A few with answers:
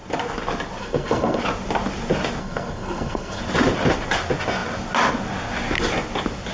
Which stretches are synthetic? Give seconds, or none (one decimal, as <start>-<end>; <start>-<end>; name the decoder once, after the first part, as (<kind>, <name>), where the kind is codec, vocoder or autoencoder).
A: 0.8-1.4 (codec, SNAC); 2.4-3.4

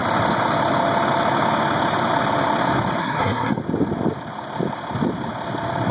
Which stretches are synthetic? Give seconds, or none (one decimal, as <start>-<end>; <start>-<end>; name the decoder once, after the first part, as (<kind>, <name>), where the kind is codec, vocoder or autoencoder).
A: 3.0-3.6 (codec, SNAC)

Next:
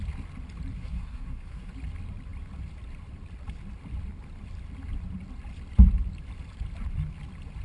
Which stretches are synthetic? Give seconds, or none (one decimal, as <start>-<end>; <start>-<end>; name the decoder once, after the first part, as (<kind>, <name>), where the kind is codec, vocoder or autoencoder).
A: 0.7-1.7 (codec, SNAC)

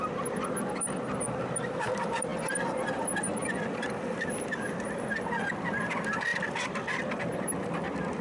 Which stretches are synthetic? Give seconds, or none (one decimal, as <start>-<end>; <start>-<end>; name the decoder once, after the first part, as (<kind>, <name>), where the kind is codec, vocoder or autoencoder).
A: none

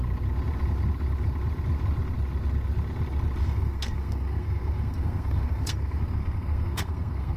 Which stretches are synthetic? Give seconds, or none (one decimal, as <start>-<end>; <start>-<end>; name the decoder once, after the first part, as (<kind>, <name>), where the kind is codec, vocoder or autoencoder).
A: 3.4-7.4 (codec, SNAC)

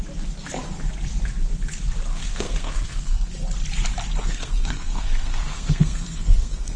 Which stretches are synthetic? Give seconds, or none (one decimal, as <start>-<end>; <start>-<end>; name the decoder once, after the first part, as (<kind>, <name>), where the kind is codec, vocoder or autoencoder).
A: 2.1-3.3 (codec, SNAC); 4.2-6.8

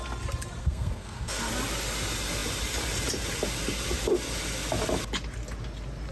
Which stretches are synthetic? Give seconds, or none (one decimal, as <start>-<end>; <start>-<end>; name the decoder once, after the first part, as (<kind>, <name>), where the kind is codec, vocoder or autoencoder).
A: 0.6-1.5 (codec, SNAC)